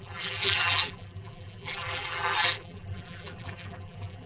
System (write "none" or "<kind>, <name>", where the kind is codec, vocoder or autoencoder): vocoder, BigVGAN v2